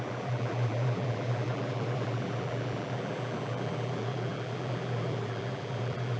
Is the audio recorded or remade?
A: remade